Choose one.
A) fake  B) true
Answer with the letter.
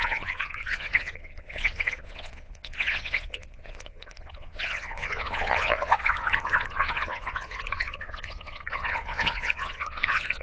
A